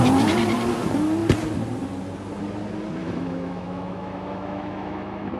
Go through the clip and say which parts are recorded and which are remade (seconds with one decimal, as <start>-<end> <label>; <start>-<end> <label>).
0.0-3.0 recorded; 3.0-5.4 remade